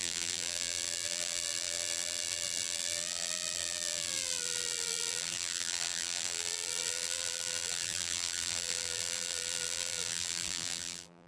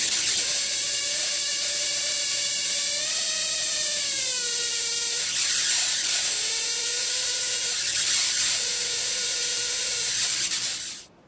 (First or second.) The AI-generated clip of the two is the first